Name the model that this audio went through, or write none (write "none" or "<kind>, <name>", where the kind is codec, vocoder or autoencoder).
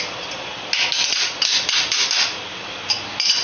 none